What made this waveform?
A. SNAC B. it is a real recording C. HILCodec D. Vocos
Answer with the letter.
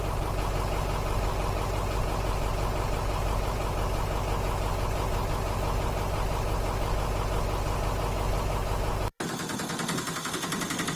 B